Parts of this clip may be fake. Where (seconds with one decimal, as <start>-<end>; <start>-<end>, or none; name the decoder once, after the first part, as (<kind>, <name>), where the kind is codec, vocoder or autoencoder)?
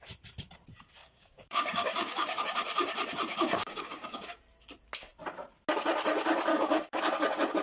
1.0-2.4 (codec, DAC); 3.3-4.4; 6.5-7.0